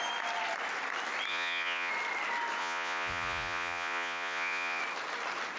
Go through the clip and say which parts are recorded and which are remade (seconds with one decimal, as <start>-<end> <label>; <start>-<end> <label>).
0.0-1.3 recorded; 1.3-1.9 remade; 1.9-2.6 recorded; 2.6-4.8 remade; 4.8-5.6 recorded